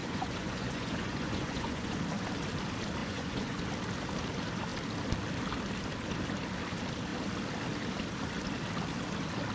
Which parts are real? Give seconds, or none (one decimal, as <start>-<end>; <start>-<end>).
2.0-3.0; 3.7-9.5